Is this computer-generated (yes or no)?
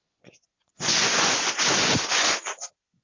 yes